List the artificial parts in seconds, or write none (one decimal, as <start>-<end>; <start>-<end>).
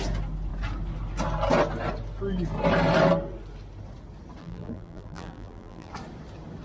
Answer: 4.4-5.9